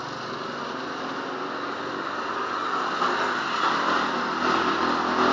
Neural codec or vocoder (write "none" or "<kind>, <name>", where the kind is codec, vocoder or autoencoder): none